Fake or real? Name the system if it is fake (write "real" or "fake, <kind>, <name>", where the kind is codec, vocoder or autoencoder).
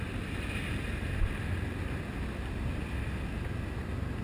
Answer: real